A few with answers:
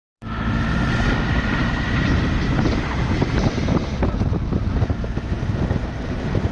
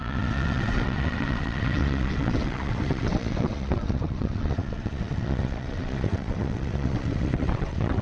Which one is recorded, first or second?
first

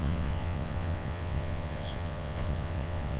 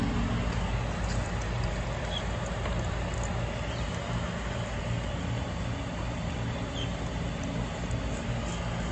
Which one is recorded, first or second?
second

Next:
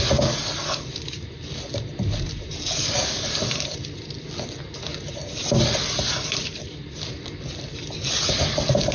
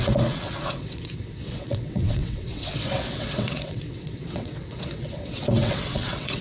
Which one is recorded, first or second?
first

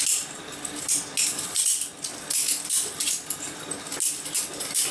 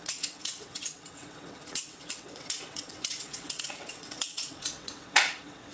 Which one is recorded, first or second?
first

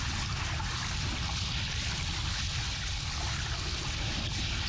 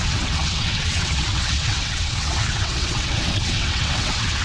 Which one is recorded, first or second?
first